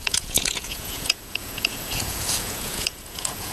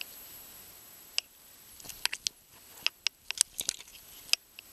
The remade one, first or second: first